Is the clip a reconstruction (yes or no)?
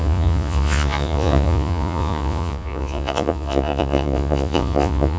yes